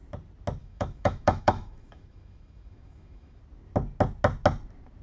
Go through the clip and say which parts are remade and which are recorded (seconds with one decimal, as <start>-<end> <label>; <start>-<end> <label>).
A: 0.0-0.6 recorded; 0.6-3.4 remade; 3.4-5.0 recorded